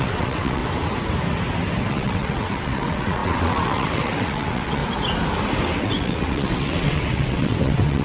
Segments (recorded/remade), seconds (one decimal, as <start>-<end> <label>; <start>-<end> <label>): 0.0-0.6 remade; 0.6-1.9 recorded; 1.9-4.8 remade; 4.8-5.8 recorded; 5.8-8.0 remade